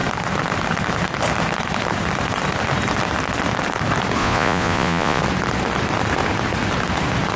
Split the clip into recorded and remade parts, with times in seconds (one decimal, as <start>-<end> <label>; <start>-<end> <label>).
0.0-4.2 recorded; 4.2-5.2 remade; 5.2-7.4 recorded